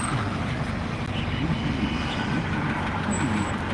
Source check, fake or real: real